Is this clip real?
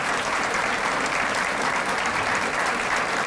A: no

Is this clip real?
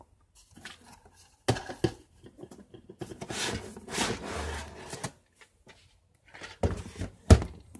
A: yes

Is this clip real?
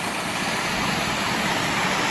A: yes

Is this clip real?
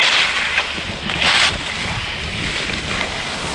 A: yes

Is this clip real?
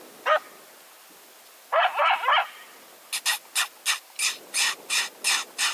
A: yes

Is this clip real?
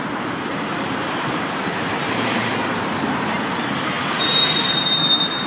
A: no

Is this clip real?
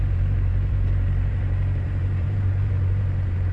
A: no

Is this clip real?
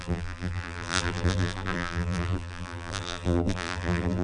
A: no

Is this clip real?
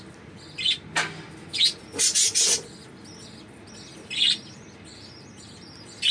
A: yes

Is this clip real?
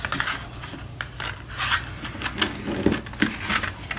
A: yes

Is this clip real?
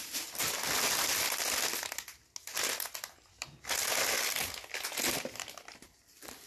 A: yes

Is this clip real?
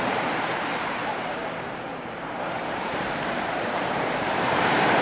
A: no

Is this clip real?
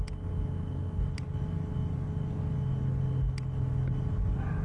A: yes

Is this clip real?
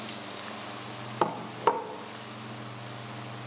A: yes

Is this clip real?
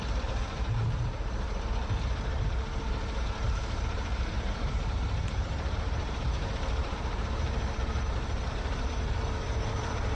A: no